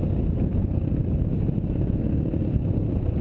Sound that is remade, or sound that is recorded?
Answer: recorded